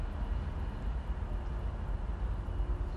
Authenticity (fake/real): real